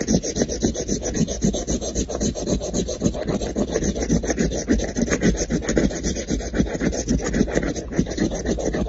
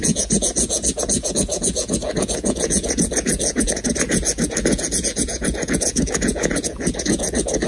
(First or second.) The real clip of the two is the first